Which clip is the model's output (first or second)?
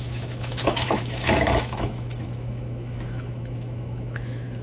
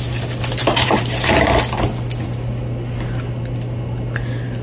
first